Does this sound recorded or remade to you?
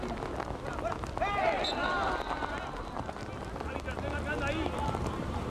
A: recorded